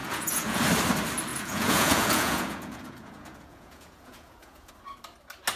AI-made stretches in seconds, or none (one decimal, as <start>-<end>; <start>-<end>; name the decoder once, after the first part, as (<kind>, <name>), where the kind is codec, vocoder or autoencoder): 0.0-0.6 (vocoder, Vocos); 1.3-4.7